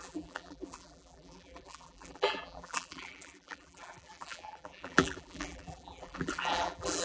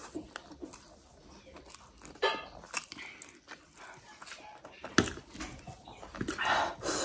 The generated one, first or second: first